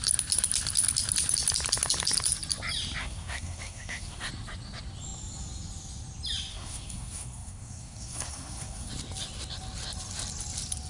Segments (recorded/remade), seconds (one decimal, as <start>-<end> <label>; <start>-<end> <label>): 0.0-3.0 recorded; 3.0-4.3 remade; 4.3-6.5 recorded; 6.5-8.9 remade; 8.9-10.9 recorded